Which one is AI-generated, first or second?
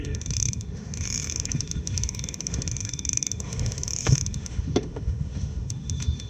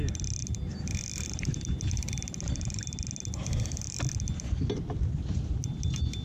first